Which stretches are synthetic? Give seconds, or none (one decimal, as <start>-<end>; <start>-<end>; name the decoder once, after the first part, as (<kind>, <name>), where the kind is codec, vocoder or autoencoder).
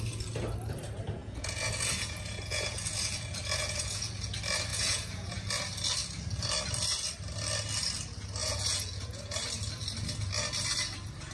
1.2-4.3 (vocoder, Vocos); 4.7-5.5; 8.4-9.2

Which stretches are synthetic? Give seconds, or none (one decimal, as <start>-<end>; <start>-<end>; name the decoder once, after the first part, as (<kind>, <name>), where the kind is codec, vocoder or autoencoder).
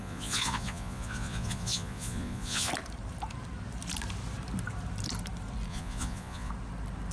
0.0-2.7 (vocoder, Vocos); 5.7-6.5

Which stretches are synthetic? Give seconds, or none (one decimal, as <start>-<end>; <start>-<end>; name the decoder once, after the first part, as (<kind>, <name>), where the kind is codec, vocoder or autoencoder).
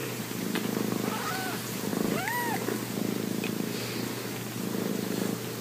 0.0-0.8 (vocoder, BigVGAN v2)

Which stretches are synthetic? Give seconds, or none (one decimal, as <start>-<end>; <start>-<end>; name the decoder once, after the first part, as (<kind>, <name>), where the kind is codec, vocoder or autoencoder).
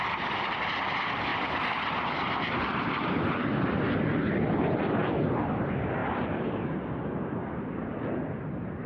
6.0-6.7 (vocoder, BigVGAN v2)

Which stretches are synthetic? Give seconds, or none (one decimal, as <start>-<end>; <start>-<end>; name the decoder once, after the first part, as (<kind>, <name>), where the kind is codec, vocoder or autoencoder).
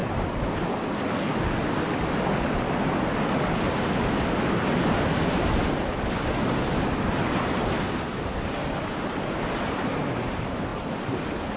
none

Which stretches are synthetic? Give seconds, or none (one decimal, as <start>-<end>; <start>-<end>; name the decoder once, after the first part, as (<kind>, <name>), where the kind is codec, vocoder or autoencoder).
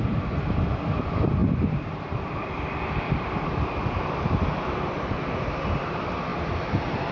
0.0-6.3 (vocoder, BigVGAN v2)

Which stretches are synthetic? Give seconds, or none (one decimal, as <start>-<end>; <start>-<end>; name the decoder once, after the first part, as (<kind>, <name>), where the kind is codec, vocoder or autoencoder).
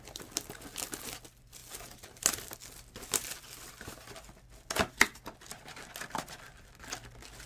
none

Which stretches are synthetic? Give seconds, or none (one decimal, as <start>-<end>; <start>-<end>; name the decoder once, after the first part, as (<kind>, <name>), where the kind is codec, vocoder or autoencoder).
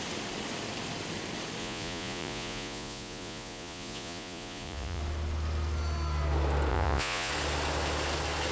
1.6-5.0 (vocoder, Vocos); 6.7-7.3